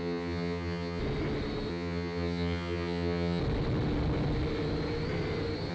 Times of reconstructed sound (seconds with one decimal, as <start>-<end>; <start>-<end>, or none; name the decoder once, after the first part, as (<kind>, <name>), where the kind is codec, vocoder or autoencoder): 0.0-1.0 (vocoder, HiFi-GAN); 1.7-3.4